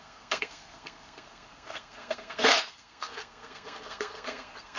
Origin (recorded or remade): remade